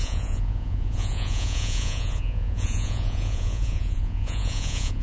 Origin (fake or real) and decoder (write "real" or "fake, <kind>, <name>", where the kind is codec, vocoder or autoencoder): fake, vocoder, Vocos